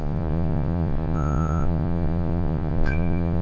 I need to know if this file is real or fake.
fake